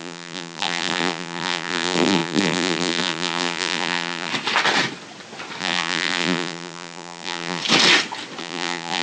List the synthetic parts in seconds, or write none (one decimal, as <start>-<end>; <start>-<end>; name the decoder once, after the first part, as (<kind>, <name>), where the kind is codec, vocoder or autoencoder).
0.0-4.3 (vocoder, BigVGAN v2); 5.6-7.6; 8.4-9.0